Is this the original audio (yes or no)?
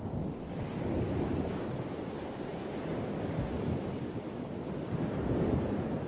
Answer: yes